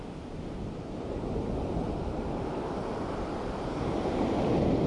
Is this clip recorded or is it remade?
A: recorded